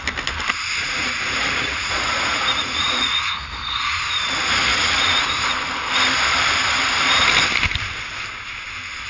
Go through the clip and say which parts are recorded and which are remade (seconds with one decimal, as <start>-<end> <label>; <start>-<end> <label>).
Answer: 0.0-0.8 recorded; 0.8-4.0 remade; 4.0-4.7 recorded; 4.7-5.3 remade; 5.3-9.1 recorded